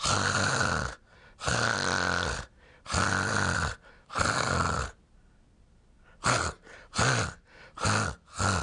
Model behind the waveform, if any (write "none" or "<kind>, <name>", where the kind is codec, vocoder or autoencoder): none